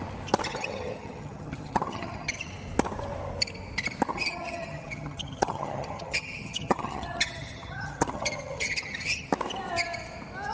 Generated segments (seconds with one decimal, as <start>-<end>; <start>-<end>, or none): 0.5-2.5; 4.1-9.3